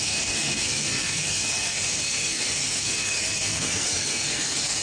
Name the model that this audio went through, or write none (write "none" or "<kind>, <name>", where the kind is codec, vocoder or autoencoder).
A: codec, SNAC